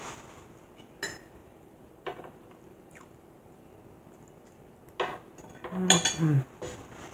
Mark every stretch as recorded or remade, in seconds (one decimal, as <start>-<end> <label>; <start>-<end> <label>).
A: 0.0-1.4 recorded; 1.4-3.7 remade; 3.7-7.1 recorded